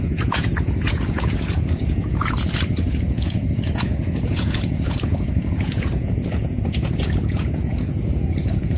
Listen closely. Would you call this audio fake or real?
fake